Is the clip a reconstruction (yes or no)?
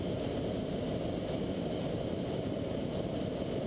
no